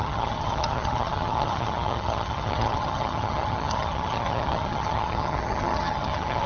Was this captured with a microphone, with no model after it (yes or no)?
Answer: no